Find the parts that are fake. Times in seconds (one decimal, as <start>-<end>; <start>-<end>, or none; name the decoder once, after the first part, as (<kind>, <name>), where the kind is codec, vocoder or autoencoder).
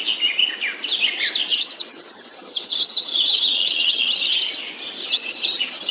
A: 1.5-4.5 (vocoder, HiFi-GAN); 5.0-5.9